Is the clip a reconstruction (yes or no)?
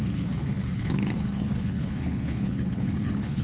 yes